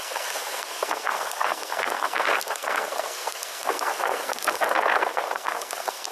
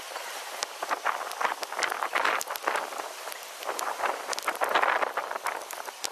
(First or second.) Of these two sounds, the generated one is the first